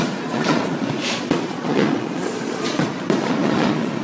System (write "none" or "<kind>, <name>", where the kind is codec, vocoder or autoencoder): vocoder, Vocos